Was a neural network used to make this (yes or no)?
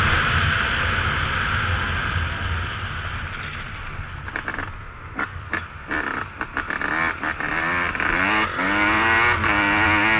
no